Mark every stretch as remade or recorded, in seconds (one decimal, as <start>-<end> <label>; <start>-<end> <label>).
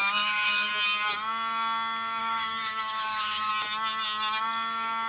0.0-0.7 remade; 0.7-2.2 recorded; 2.2-3.5 remade; 3.5-5.1 recorded